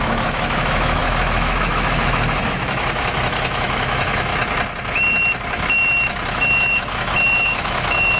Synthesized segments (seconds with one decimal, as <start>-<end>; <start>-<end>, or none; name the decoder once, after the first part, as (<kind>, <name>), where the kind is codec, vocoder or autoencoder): 0.0-4.3 (autoencoder, DAC-VAE); 6.3-8.2